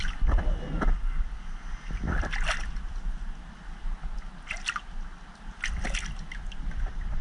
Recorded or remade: recorded